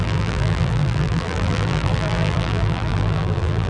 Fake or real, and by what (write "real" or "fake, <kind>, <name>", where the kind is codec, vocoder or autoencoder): fake, vocoder, BigVGAN v2